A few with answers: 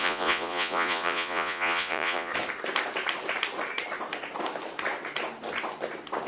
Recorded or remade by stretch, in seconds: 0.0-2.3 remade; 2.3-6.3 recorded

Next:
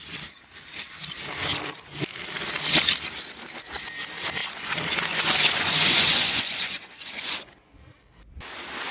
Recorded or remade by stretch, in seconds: 0.0-4.4 recorded; 4.4-7.5 remade; 7.5-8.9 recorded

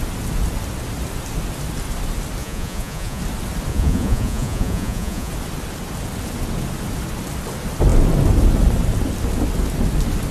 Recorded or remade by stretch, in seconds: 0.0-2.4 recorded; 2.4-3.2 remade; 3.2-3.7 recorded; 3.7-5.3 remade; 5.3-10.3 recorded

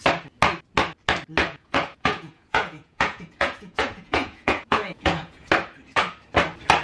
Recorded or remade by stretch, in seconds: 0.0-1.4 recorded; 1.4-5.5 remade; 5.5-6.8 recorded

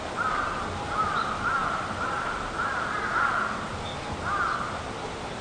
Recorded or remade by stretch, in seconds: 0.0-5.4 recorded

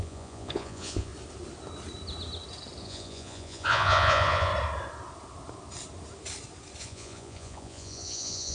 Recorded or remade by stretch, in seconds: 0.0-1.1 remade; 1.1-2.8 recorded; 2.8-4.5 remade; 4.5-6.8 recorded; 6.8-8.5 remade

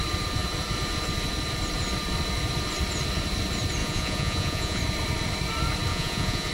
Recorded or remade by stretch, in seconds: 0.0-3.8 recorded; 3.8-4.8 remade; 4.8-5.9 recorded; 5.9-6.5 remade

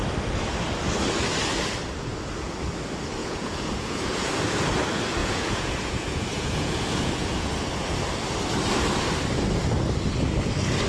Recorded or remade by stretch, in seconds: 0.0-3.2 recorded; 3.2-4.3 remade; 4.3-5.2 recorded; 5.2-7.5 remade; 7.5-10.9 recorded